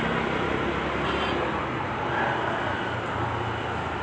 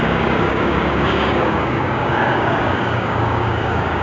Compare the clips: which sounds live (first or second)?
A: first